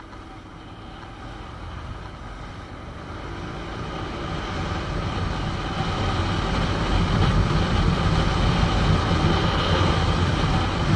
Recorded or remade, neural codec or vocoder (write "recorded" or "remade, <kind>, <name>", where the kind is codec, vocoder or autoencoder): recorded